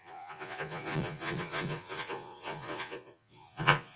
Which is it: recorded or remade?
remade